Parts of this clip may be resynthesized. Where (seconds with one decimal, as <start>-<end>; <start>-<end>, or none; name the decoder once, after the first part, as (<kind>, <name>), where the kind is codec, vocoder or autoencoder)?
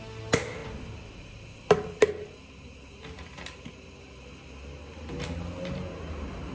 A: none